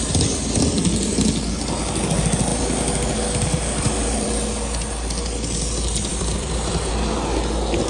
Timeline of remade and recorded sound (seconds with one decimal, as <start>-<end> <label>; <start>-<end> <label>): 0.0-2.5 recorded; 2.5-4.3 remade; 4.3-6.1 recorded; 6.1-6.9 remade; 6.9-7.9 recorded